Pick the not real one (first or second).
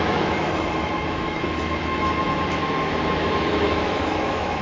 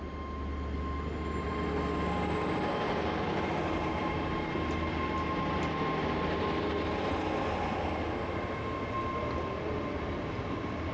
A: first